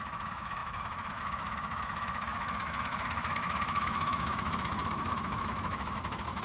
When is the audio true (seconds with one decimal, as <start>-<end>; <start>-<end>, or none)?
none